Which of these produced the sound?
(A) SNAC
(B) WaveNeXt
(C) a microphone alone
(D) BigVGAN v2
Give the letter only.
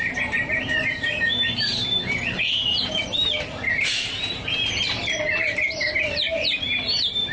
D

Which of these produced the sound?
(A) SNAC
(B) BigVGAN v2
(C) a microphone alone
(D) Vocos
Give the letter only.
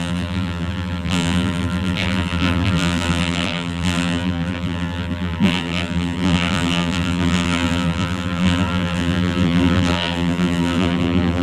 B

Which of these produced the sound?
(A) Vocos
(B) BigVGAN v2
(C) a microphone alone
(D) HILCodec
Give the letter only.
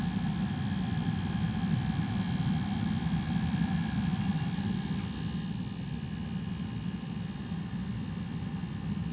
C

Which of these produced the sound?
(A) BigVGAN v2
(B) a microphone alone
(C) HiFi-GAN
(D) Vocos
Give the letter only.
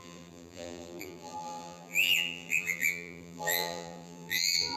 A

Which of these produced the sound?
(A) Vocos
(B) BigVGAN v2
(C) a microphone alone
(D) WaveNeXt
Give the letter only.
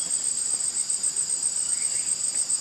C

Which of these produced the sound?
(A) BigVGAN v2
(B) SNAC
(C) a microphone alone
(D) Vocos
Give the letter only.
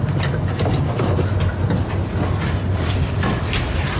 C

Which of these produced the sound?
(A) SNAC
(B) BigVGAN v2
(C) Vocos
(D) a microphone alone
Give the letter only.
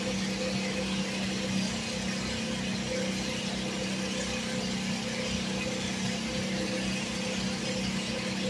D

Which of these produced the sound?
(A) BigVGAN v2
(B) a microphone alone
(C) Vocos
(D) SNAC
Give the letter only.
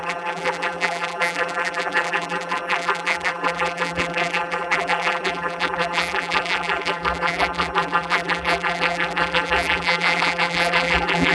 A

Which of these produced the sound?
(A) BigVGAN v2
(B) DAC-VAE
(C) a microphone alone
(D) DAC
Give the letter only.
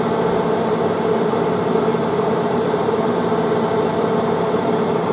A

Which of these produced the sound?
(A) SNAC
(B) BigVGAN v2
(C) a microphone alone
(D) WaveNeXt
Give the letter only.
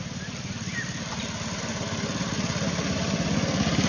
C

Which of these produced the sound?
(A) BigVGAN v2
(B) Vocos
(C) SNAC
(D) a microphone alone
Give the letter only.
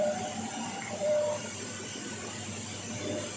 A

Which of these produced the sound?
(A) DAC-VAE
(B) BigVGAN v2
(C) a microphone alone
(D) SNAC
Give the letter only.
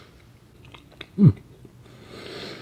C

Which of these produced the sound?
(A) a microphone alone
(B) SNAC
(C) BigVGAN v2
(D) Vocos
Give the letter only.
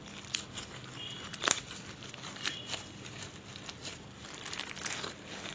C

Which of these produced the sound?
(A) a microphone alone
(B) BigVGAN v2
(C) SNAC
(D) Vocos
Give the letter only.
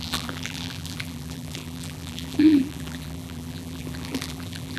B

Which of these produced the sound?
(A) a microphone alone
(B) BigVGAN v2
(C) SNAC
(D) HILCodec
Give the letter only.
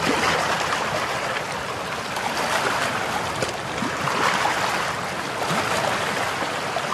A